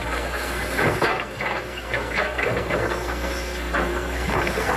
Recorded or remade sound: remade